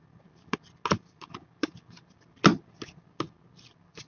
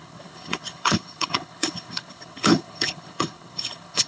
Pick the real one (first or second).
first